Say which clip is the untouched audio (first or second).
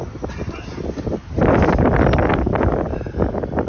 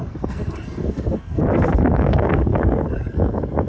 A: first